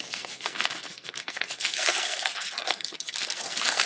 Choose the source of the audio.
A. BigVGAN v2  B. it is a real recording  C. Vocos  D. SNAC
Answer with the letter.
D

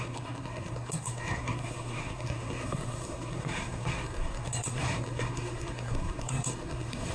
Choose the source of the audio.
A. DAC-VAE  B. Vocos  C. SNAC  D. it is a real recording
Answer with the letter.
C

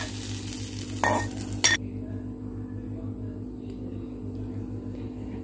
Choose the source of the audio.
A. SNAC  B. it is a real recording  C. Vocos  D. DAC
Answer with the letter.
B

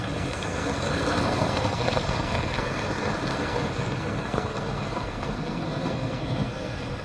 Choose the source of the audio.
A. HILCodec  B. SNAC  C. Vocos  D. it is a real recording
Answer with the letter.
B